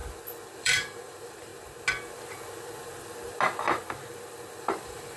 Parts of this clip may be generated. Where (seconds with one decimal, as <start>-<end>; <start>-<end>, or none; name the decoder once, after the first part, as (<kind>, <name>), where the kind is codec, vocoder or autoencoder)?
0.6-1.5 (vocoder, BigVGAN v2); 4.6-5.2